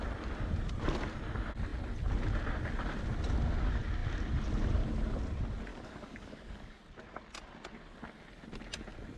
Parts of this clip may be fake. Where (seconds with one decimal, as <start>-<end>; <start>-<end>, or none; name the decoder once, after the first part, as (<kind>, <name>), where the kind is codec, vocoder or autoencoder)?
5.7-6.8 (codec, DAC)